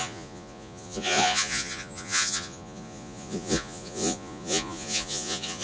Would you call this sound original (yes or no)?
no